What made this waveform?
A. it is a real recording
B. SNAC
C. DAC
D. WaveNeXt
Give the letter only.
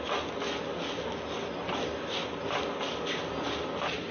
A